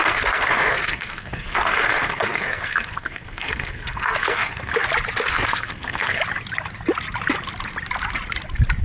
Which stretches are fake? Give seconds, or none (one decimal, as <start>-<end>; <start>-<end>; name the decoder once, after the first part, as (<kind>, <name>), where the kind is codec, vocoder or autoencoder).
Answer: 0.0-4.7 (codec, SNAC); 5.3-6.2